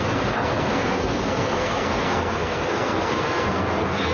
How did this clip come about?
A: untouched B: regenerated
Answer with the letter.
B